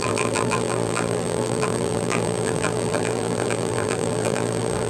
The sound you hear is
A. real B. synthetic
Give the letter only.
B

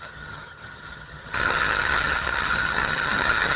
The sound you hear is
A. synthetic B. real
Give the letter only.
A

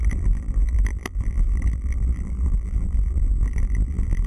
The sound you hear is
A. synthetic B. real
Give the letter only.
A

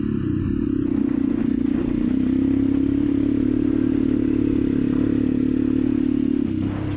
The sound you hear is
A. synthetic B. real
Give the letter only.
B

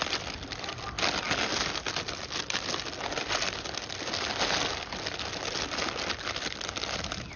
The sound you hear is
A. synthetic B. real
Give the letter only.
B